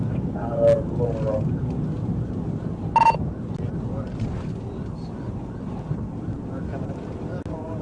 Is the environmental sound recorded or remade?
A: recorded